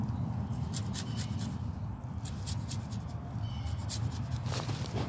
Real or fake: fake